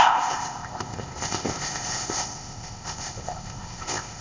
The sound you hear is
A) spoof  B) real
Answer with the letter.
A